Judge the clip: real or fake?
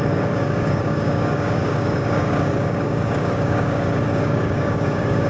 fake